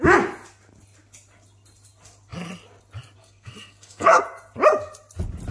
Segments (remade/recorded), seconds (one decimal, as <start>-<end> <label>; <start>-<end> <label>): 0.0-3.2 recorded; 3.2-4.2 remade; 4.2-5.5 recorded